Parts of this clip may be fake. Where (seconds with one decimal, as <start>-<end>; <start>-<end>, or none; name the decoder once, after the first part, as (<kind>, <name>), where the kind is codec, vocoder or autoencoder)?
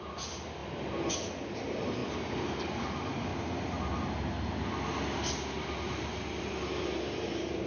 none